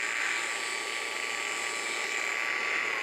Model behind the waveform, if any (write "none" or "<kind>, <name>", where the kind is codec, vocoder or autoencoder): none